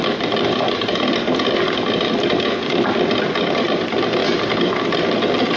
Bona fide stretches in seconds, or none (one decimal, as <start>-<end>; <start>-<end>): 0.0-5.6